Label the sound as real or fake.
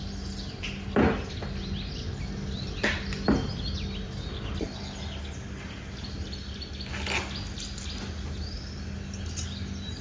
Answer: real